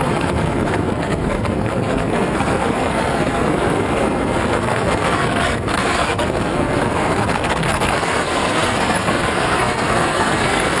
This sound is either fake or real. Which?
fake